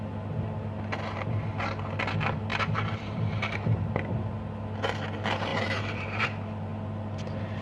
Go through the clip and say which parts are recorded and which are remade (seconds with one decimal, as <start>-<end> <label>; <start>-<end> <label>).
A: 0.0-2.5 recorded; 2.5-3.9 remade; 3.9-5.5 recorded; 5.5-6.2 remade; 6.2-7.6 recorded

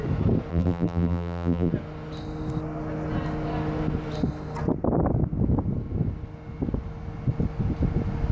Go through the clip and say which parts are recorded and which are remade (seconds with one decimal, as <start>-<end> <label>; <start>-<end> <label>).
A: 0.0-0.5 recorded; 0.5-1.7 remade; 1.7-8.3 recorded

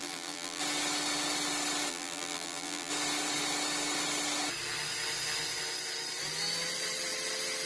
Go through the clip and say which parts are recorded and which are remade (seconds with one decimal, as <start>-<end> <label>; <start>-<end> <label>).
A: 0.0-0.6 remade; 0.6-1.9 recorded; 1.9-2.9 remade; 2.9-7.7 recorded

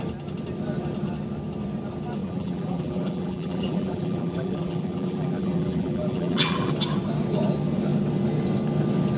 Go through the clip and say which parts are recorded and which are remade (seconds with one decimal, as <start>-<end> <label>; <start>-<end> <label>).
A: 0.0-2.2 recorded; 2.2-6.7 remade; 6.7-9.2 recorded

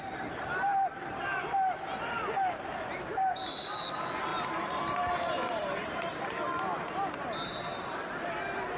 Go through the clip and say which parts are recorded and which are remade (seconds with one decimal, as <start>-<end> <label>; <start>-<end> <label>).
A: 0.0-4.3 recorded; 4.3-7.2 remade; 7.2-8.8 recorded

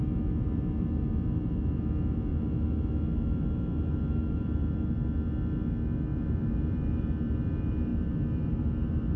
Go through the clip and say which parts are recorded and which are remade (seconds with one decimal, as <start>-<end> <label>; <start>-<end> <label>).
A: 0.0-6.1 recorded; 6.1-7.0 remade; 7.0-7.9 recorded; 7.9-9.2 remade